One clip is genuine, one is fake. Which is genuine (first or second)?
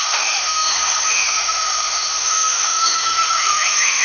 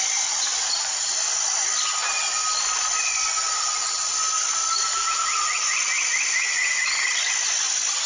second